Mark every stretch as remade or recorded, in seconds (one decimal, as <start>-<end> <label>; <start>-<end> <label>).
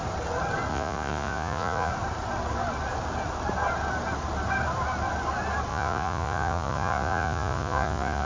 0.0-0.7 recorded; 0.7-1.9 remade; 1.9-5.7 recorded; 5.7-8.3 remade